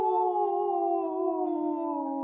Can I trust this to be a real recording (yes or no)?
yes